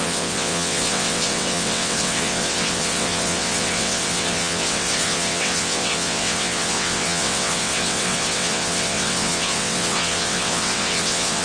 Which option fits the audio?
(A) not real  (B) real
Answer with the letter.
A